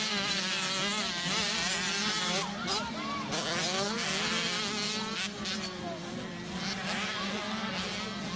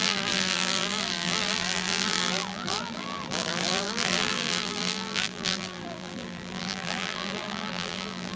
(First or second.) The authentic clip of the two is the first